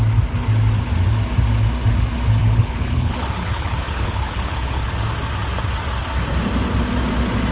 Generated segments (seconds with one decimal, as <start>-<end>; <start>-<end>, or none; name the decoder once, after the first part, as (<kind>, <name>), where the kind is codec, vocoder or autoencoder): 2.4-4.9 (codec, HILCodec)